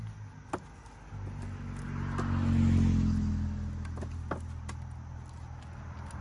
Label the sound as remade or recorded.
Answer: recorded